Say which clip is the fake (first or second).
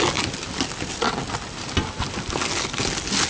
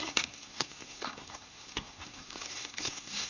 second